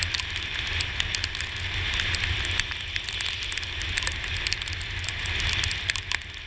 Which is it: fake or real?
real